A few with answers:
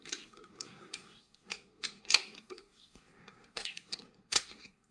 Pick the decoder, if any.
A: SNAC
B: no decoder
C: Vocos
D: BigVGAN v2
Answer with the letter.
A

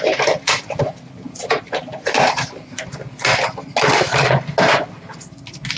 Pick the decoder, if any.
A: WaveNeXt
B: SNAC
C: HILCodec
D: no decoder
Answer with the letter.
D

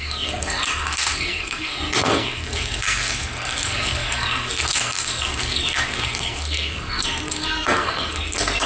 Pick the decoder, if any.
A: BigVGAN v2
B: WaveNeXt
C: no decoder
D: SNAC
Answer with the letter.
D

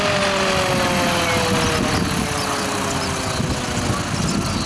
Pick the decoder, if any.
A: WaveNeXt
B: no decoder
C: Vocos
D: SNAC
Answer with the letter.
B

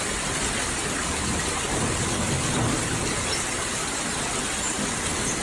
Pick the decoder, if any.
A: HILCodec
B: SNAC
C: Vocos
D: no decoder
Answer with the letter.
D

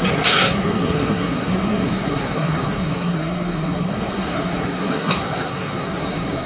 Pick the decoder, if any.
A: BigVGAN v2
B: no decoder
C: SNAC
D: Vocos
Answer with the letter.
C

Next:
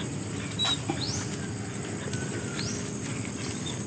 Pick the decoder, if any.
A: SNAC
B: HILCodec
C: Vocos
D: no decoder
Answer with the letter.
D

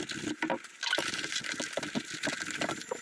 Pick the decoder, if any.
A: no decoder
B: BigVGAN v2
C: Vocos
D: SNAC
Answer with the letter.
A